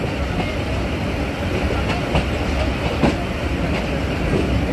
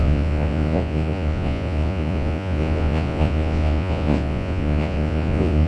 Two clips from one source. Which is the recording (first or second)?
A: first